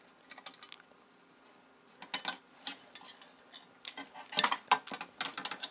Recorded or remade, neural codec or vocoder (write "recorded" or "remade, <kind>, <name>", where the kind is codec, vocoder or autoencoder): recorded